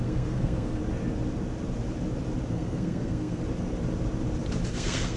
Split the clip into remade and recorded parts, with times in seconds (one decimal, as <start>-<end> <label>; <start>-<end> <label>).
0.0-0.8 remade; 0.8-2.5 recorded; 2.5-3.4 remade; 3.4-4.7 recorded; 4.7-5.2 remade